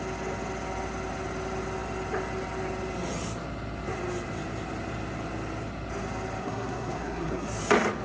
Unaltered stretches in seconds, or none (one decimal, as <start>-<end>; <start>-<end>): 0.0-6.4; 7.6-8.0